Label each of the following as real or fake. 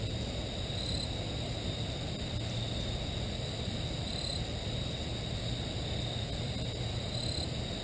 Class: real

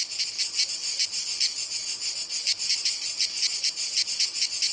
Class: real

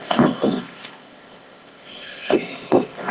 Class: fake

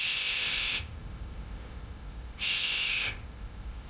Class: fake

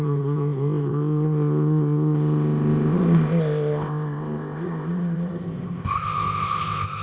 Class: fake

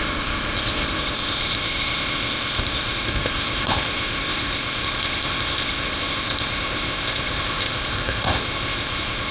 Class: fake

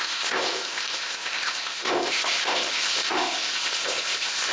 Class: fake